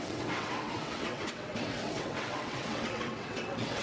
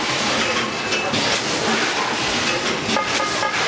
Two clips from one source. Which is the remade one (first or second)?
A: first